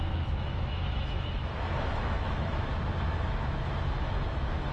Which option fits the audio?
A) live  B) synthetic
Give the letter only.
B